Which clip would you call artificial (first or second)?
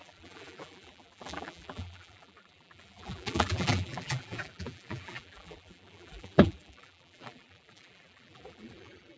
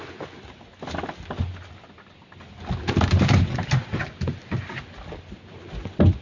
first